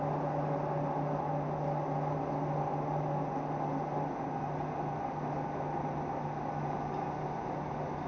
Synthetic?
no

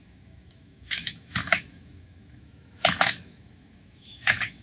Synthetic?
yes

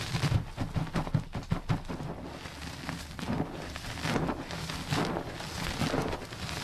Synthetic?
no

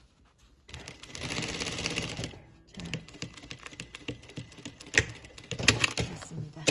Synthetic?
no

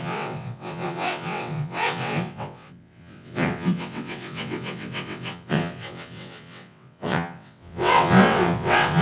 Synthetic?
yes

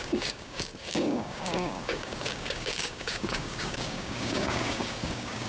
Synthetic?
yes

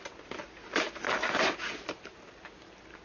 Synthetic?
no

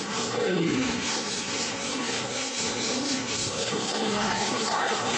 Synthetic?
yes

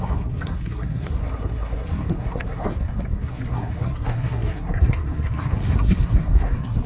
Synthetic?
yes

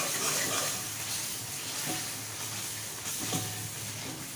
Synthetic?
no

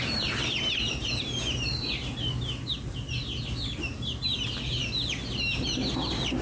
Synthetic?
no